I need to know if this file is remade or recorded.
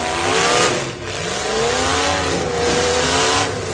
recorded